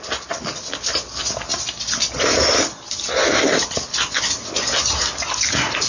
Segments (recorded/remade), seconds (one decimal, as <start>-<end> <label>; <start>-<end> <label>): 0.0-5.9 recorded